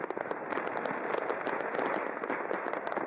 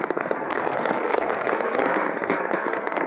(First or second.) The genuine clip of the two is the first